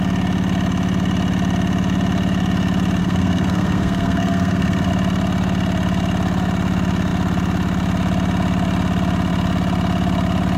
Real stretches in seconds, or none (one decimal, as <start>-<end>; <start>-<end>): 0.0-3.0; 4.9-10.6